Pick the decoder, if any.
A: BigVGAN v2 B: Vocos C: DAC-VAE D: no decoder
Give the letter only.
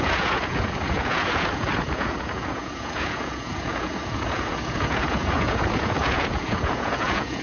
B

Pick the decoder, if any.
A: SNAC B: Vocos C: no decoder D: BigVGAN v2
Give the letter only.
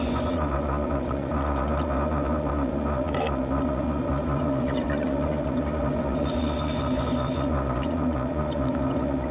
B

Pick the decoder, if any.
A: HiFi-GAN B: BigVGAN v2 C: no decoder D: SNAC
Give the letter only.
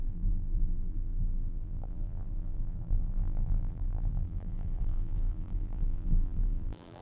B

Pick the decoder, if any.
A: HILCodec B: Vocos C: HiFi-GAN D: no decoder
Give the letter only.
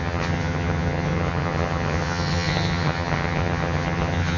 C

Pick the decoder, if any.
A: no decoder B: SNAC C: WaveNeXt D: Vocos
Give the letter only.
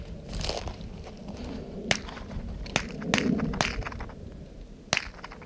A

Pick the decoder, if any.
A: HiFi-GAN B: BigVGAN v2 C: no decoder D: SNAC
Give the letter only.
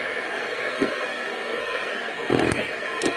D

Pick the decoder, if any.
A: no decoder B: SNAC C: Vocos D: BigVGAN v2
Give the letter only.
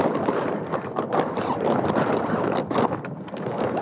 D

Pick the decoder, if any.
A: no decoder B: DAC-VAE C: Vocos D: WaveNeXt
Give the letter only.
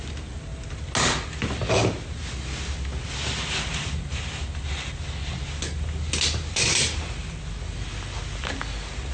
A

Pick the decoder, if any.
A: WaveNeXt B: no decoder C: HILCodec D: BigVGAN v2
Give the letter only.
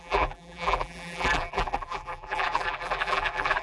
D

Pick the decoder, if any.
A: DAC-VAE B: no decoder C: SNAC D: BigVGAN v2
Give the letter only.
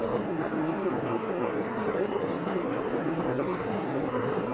C